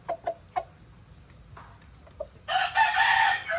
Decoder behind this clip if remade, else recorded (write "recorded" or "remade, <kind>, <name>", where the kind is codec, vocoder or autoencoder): recorded